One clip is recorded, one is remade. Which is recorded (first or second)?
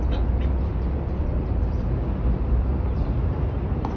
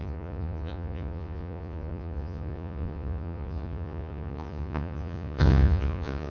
first